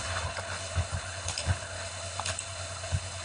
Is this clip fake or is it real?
fake